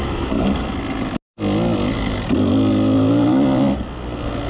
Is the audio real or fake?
real